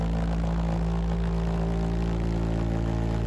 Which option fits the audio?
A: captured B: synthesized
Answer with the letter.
A